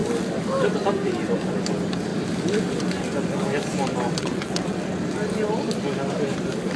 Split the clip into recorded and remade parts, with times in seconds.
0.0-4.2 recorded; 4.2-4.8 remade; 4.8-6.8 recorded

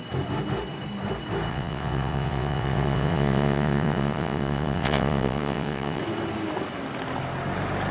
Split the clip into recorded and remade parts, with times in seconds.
0.0-1.5 recorded; 1.5-6.0 remade; 6.0-7.9 recorded

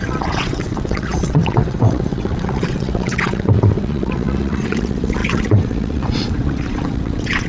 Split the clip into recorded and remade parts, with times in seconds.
0.0-7.5 remade

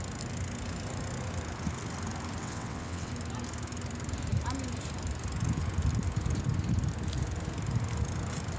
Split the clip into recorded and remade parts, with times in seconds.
0.0-2.4 recorded; 2.4-3.1 remade; 3.1-8.6 recorded

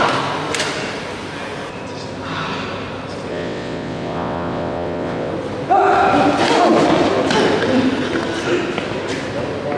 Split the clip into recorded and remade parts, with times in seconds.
0.0-3.3 recorded; 3.3-5.3 remade; 5.3-9.8 recorded